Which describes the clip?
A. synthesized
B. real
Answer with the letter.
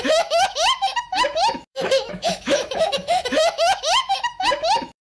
A